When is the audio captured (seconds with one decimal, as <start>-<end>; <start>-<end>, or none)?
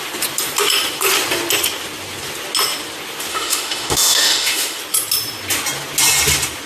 0.0-3.3; 4.8-6.7